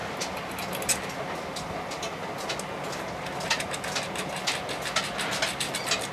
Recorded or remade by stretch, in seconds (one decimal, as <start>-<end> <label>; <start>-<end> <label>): 0.0-6.1 recorded